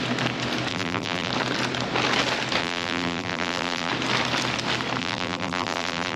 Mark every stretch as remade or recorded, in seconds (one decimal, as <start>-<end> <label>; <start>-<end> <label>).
0.0-0.7 recorded; 0.7-1.3 remade; 1.3-2.6 recorded; 2.6-3.9 remade; 3.9-5.0 recorded; 5.0-6.2 remade